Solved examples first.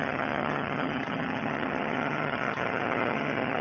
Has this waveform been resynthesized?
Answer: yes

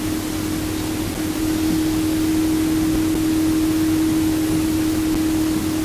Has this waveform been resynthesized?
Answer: no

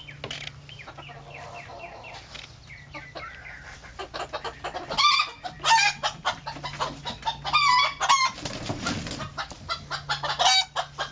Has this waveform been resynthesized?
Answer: no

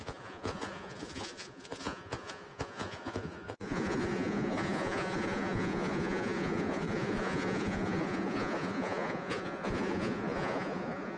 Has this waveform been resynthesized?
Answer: yes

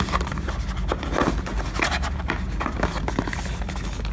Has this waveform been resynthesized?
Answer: no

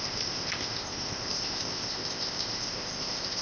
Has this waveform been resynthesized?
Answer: yes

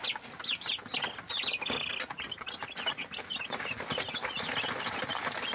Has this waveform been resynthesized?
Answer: no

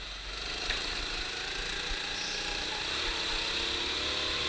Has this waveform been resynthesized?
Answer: no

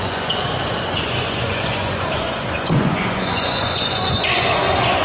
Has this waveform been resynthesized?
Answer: yes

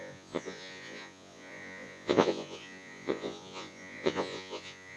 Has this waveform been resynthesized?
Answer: yes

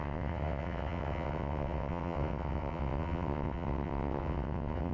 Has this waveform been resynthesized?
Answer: yes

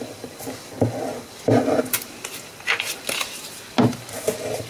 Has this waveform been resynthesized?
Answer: no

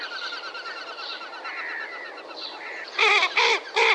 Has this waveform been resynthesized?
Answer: no